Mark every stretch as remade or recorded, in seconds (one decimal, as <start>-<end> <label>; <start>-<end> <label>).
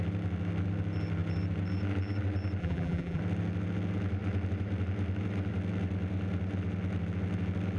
0.0-2.6 recorded; 2.6-3.2 remade; 3.2-7.8 recorded